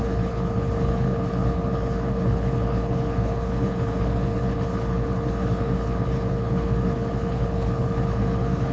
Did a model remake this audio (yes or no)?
yes